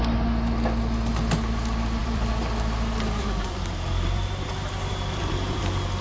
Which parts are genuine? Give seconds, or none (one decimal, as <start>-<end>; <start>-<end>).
0.0-2.0; 5.6-6.0